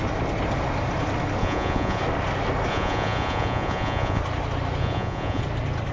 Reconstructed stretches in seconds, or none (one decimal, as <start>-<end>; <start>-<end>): 1.4-2.0; 2.7-4.2; 4.8-5.4